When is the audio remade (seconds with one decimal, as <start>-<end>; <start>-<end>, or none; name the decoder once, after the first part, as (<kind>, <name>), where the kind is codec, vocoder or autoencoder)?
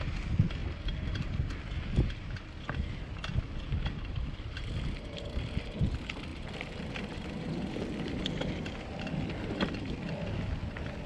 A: 0.6-1.6 (vocoder, BigVGAN v2); 3.3-5.5; 6.3-9.1